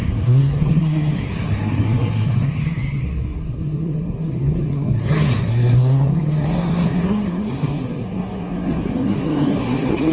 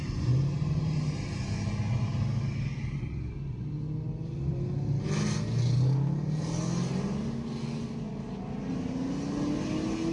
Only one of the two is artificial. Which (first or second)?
first